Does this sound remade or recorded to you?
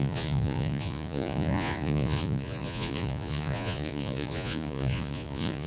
remade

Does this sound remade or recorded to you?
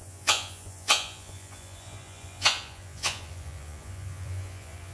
remade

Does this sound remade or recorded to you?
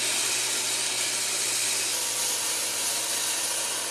recorded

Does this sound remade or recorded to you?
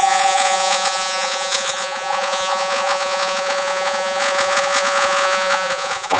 remade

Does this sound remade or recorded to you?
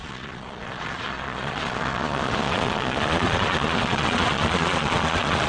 remade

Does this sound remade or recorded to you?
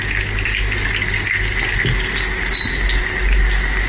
recorded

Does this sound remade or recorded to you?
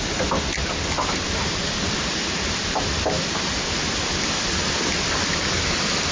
recorded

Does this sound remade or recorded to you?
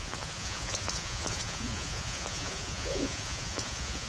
remade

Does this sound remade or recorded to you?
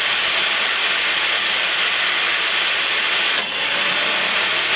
recorded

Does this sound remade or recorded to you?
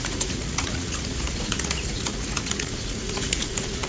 remade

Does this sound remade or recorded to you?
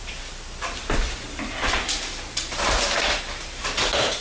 recorded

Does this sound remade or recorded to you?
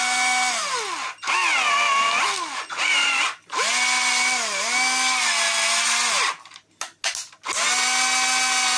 recorded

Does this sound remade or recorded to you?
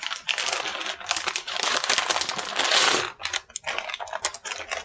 recorded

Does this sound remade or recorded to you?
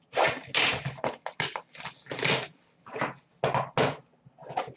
recorded